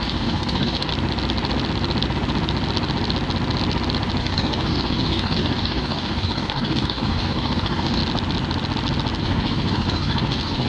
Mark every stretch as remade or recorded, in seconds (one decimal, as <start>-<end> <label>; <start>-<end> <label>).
0.0-0.9 remade; 0.9-4.2 recorded; 4.2-8.0 remade; 8.0-9.2 recorded; 9.2-10.7 remade